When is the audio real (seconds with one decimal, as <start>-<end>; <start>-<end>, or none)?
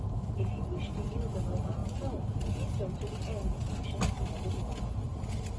0.0-5.6